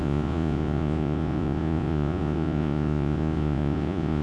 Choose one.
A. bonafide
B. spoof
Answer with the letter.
B